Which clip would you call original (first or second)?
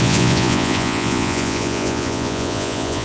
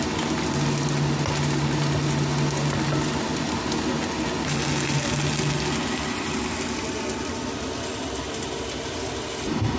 second